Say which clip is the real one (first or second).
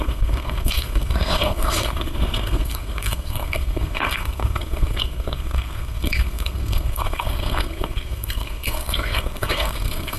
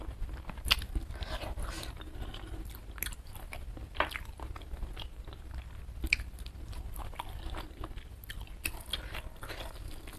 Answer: second